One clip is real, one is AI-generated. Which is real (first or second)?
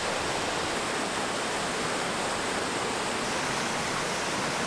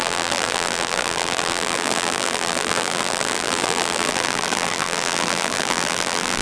first